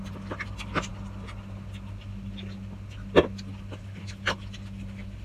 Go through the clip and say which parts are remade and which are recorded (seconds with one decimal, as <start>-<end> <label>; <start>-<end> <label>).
0.0-5.2 recorded